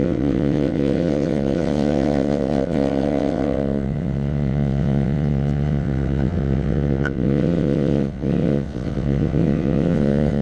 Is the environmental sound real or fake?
fake